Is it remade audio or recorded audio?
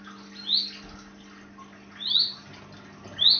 recorded